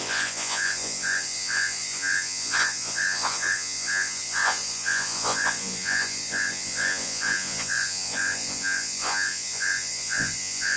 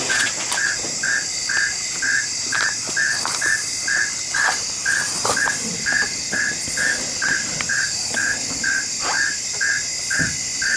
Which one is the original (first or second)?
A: second